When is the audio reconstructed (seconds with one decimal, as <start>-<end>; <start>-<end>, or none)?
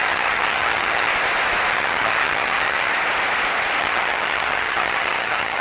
0.0-1.1; 1.7-2.9; 3.8-5.6